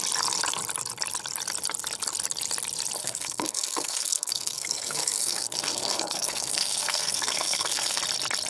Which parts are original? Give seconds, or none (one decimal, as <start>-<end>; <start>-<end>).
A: 0.0-3.0; 8.0-8.5